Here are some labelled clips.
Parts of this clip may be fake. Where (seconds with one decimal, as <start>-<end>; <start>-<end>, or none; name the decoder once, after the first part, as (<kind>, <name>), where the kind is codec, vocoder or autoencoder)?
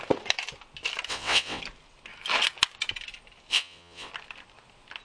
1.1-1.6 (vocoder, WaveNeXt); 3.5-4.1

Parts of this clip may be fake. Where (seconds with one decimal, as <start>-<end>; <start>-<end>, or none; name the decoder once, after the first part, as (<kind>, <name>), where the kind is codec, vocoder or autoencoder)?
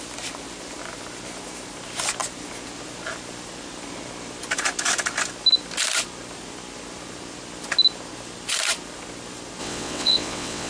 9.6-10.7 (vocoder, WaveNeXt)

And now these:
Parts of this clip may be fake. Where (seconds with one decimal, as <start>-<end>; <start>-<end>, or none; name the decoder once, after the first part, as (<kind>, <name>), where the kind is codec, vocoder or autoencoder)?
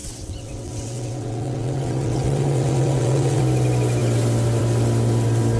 0.0-3.4 (vocoder, WaveNeXt)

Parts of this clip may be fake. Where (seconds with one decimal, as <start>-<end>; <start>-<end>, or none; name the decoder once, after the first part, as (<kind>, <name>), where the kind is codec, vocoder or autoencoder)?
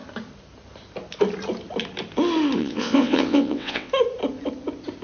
2.6-3.9 (vocoder, WaveNeXt)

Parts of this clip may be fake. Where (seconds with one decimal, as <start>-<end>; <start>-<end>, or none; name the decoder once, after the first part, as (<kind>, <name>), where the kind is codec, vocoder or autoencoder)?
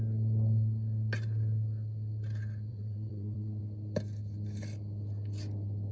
2.7-3.6 (vocoder, WaveNeXt)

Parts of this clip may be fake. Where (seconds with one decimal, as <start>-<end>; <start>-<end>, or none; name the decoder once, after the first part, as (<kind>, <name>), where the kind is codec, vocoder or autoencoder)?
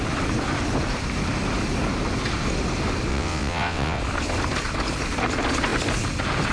3.1-4.0 (vocoder, WaveNeXt)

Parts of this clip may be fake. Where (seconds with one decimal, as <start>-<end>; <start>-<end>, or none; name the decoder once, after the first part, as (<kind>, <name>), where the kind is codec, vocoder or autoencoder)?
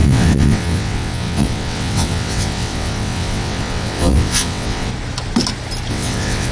0.0-4.9 (vocoder, WaveNeXt); 5.9-6.5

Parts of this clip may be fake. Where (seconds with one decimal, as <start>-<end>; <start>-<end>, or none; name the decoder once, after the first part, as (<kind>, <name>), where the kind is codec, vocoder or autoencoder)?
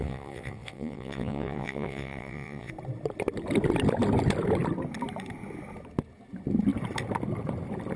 0.0-2.7 (vocoder, WaveNeXt)